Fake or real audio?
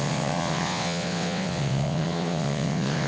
fake